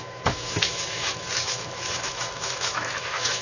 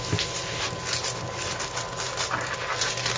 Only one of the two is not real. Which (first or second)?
first